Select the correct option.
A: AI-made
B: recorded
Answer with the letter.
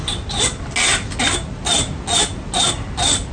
B